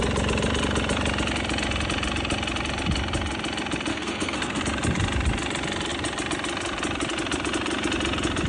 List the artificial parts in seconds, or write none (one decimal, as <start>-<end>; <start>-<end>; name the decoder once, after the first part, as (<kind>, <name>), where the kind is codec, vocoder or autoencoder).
3.9-4.6 (codec, SNAC)